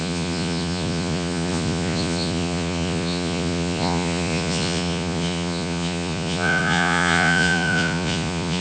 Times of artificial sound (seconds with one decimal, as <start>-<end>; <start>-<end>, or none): 0.0-8.6